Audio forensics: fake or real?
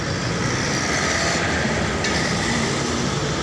real